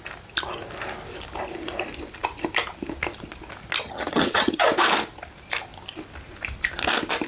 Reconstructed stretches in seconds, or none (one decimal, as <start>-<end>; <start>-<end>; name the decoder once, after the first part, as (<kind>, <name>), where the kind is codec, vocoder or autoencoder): 3.8-4.7 (vocoder, HiFi-GAN)